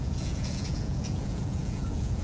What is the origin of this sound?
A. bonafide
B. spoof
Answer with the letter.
B